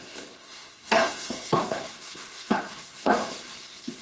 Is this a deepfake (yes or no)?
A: yes